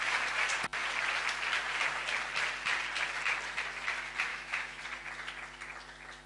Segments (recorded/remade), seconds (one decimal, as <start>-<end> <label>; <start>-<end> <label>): 0.0-4.3 recorded; 4.3-4.8 remade; 4.8-6.3 recorded